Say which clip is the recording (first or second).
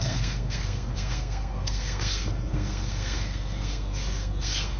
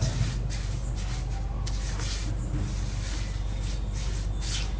second